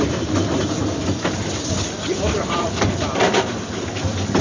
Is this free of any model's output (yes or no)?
yes